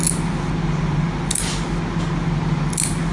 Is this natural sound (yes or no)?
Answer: yes